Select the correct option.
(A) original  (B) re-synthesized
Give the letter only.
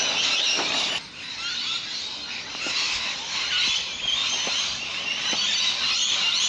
A